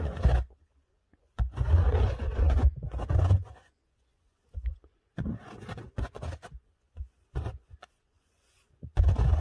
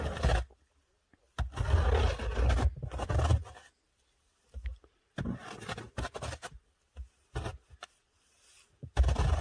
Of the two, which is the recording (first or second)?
second